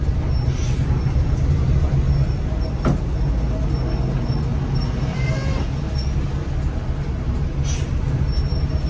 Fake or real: real